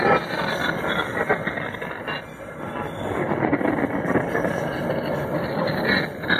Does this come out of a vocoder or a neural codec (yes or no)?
no